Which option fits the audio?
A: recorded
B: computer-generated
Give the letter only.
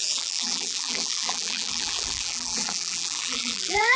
B